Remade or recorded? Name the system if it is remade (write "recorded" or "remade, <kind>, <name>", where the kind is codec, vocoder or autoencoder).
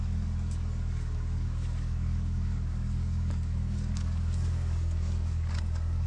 remade, codec, DAC